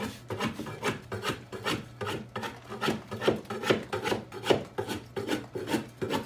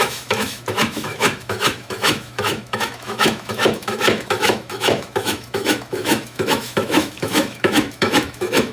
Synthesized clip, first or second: second